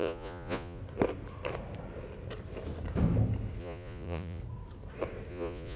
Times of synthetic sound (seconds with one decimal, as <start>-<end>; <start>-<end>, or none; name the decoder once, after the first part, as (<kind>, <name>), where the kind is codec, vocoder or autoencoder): 0.0-0.8 (vocoder, Vocos); 3.6-4.4; 5.3-5.8